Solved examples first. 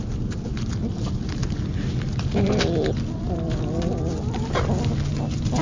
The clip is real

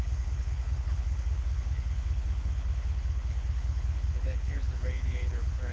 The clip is fake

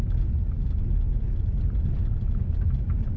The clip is real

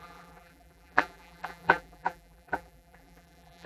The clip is fake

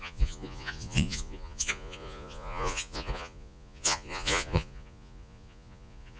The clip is fake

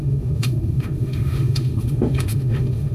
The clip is fake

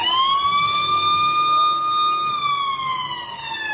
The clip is real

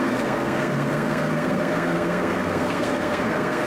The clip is fake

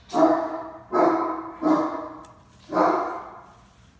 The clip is real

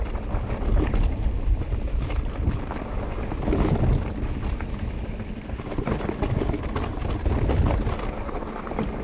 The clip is real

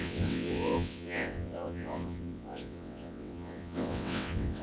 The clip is fake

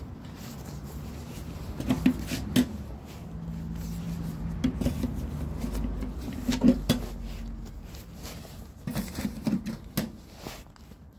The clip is real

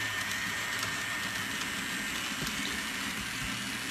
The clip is real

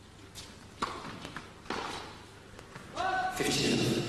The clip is real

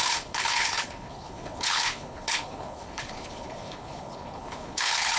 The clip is fake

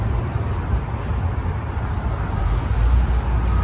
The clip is real